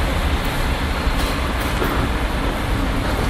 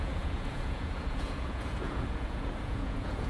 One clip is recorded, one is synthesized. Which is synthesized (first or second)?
second